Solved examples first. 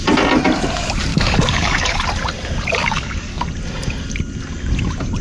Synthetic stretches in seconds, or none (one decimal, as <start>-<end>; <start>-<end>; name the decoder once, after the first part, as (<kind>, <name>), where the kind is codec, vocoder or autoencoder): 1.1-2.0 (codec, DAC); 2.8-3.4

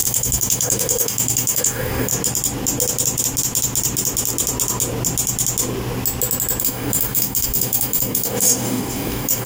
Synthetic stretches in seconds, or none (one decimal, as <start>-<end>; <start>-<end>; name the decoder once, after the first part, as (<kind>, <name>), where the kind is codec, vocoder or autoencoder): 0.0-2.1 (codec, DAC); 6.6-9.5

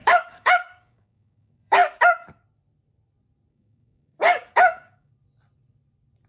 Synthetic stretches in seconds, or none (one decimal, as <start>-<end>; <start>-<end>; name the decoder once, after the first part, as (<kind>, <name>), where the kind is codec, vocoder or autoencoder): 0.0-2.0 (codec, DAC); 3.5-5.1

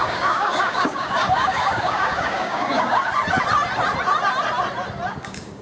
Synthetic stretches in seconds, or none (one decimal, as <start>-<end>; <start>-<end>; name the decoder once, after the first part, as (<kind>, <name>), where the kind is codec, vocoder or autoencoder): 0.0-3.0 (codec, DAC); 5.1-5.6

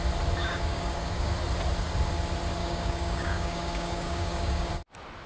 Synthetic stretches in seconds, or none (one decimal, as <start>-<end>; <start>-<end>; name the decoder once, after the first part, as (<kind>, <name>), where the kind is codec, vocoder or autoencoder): 0.4-1.3 (codec, DAC); 2.6-4.7